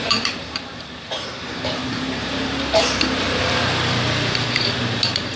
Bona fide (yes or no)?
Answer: no